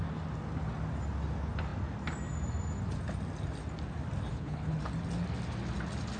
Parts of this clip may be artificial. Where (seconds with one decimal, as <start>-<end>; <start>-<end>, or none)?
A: 4.3-4.8